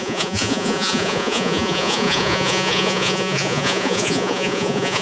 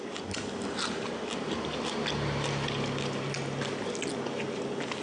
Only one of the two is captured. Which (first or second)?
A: second